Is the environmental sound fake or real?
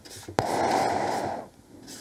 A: real